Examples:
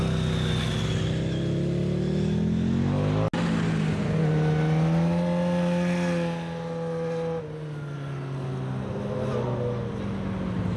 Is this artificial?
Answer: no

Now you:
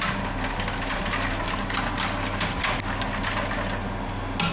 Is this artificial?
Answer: no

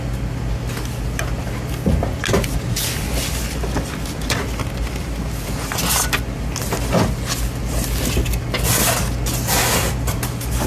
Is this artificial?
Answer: no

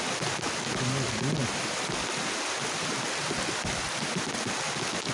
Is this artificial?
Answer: no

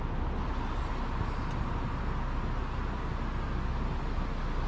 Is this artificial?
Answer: no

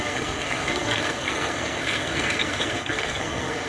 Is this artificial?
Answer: yes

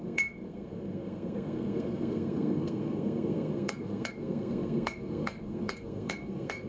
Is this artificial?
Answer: yes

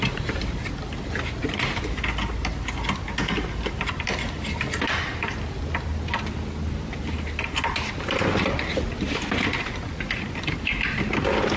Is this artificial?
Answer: no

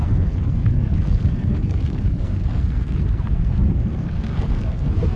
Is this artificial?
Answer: yes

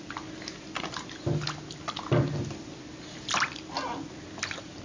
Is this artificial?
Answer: no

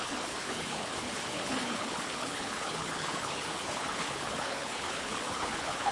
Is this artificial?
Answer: yes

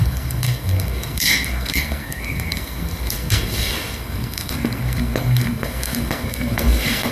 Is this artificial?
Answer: yes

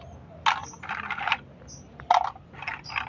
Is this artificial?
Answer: no